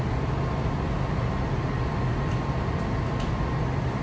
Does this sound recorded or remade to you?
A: recorded